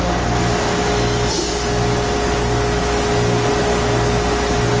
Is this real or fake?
real